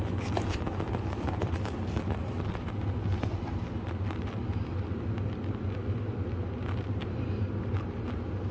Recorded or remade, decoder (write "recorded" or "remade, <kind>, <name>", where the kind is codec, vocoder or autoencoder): recorded